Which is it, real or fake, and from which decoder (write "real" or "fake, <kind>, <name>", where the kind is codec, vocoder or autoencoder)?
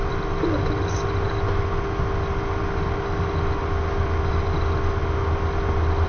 real